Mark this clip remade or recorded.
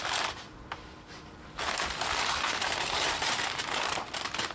recorded